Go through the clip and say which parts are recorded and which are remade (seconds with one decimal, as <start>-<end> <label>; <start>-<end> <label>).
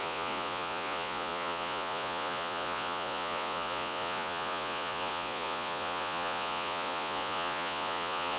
0.0-8.4 remade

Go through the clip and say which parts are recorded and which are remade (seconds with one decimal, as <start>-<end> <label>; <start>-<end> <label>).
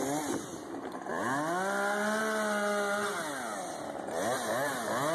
0.0-5.1 recorded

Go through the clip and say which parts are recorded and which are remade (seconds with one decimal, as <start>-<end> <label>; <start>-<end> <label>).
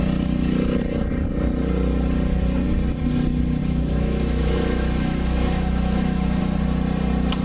0.0-3.6 recorded; 3.6-6.4 remade; 6.4-7.4 recorded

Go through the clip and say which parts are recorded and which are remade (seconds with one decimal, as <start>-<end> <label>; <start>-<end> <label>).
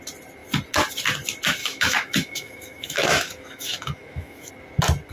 0.0-1.6 recorded; 1.6-4.5 remade; 4.5-5.1 recorded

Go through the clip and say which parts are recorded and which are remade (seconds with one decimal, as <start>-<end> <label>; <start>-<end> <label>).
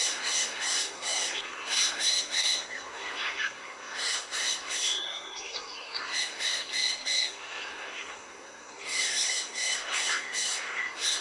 0.0-11.2 remade